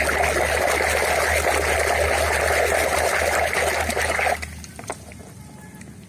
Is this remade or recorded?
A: recorded